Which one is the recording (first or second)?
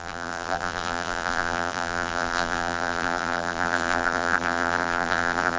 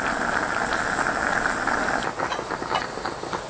second